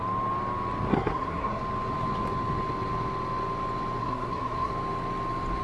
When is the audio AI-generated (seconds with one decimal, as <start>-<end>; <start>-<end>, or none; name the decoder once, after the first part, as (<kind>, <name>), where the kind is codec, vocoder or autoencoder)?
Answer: 0.9-1.6 (codec, SNAC); 4.0-4.7